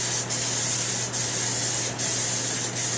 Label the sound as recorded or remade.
recorded